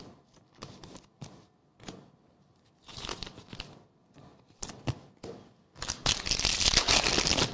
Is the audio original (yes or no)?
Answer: yes